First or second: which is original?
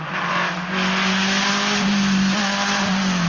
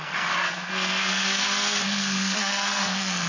first